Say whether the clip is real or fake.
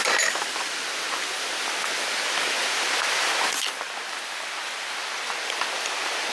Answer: real